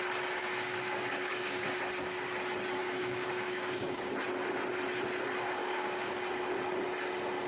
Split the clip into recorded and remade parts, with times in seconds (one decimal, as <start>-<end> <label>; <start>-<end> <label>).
0.0-0.4 recorded; 0.4-1.8 remade; 1.8-2.8 recorded; 2.8-4.1 remade; 4.1-5.6 recorded; 5.6-6.1 remade; 6.1-7.5 recorded